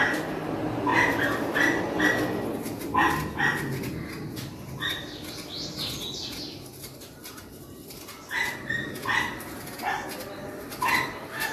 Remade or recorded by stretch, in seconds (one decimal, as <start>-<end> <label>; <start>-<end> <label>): 0.0-11.5 recorded